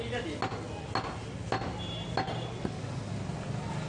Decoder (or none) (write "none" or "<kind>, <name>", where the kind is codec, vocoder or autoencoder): none